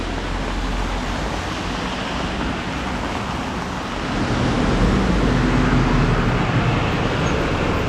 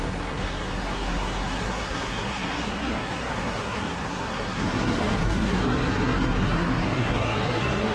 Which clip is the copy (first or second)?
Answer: second